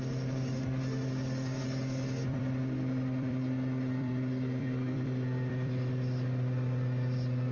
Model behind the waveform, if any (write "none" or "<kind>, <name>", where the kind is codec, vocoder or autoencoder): vocoder, BigVGAN v2